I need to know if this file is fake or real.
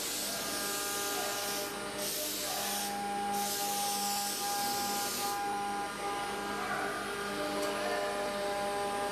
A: real